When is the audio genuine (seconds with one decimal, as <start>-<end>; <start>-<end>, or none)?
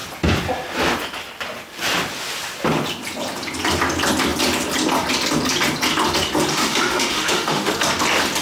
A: 0.0-6.5; 7.7-8.4